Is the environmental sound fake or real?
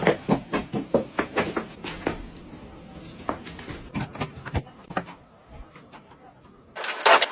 real